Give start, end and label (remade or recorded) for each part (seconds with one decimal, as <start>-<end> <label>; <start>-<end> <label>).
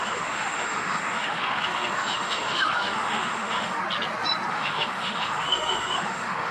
0.0-3.8 remade; 3.8-4.5 recorded; 4.5-6.5 remade